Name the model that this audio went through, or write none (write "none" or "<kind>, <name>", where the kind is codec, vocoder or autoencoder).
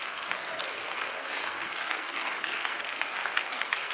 codec, SNAC